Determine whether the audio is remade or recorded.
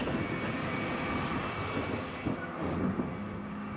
recorded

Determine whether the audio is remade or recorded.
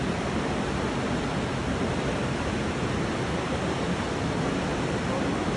recorded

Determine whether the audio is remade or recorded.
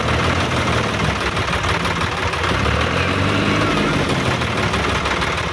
recorded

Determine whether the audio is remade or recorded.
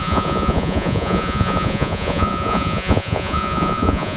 remade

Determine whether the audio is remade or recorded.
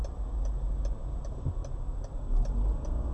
recorded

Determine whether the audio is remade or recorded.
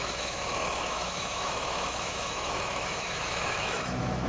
remade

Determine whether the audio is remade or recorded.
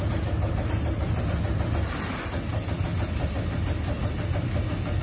recorded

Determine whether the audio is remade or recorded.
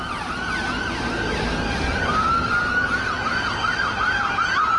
recorded